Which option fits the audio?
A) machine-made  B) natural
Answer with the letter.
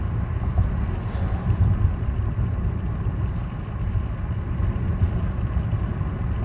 B